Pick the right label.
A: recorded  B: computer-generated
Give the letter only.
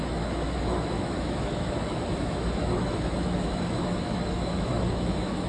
B